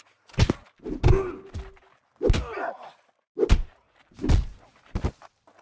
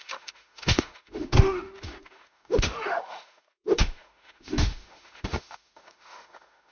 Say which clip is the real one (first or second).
first